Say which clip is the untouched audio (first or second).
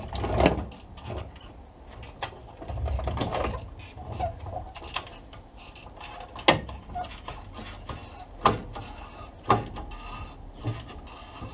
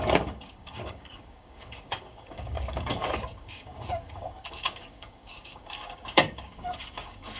first